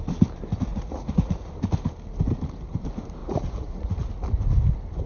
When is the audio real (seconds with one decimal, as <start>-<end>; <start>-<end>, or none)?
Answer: 0.0-0.7; 1.5-3.2; 4.1-5.1